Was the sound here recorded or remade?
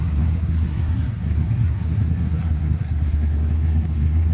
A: remade